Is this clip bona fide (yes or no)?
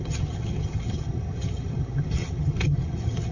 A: no